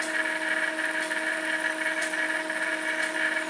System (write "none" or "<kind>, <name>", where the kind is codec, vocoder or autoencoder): none